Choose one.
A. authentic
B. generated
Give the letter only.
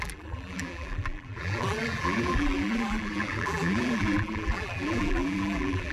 B